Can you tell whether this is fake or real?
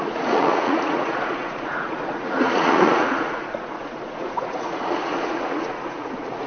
fake